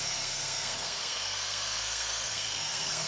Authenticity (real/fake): fake